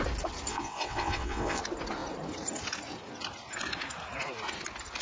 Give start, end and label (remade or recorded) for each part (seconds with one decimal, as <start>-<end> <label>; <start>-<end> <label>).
0.0-0.5 recorded; 0.5-1.6 remade; 1.6-5.0 recorded